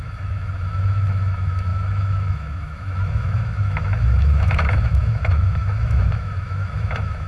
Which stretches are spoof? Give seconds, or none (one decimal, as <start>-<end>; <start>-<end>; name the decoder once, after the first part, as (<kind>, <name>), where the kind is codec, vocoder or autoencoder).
0.0-7.3 (autoencoder, DAC-VAE)